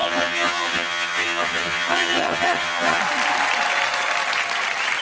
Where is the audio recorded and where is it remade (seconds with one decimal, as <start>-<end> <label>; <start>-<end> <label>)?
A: 0.0-3.0 remade; 3.0-5.0 recorded